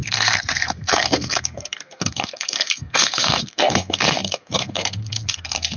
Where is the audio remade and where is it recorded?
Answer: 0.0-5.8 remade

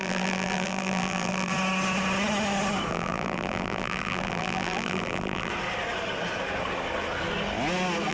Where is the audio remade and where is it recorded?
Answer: 0.0-1.5 remade; 1.5-2.9 recorded; 2.9-5.5 remade; 5.5-8.1 recorded

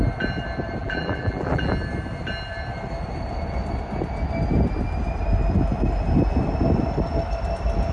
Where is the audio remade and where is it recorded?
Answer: 0.0-0.8 recorded; 0.8-1.7 remade; 1.7-7.9 recorded